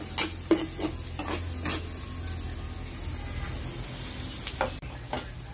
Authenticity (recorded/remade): recorded